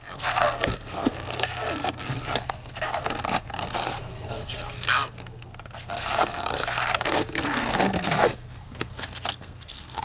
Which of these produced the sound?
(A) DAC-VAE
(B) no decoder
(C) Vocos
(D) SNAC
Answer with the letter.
D